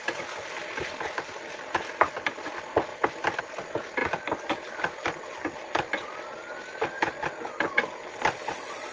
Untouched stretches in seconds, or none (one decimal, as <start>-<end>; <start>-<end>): 0.0-8.9